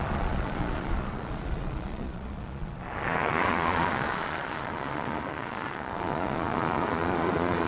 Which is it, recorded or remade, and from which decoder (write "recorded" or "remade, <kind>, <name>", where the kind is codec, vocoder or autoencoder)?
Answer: remade, vocoder, Vocos